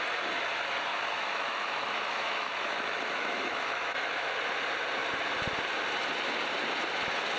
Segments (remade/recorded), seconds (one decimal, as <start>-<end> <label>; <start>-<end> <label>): 0.0-0.9 recorded; 0.9-4.3 remade; 4.3-7.4 recorded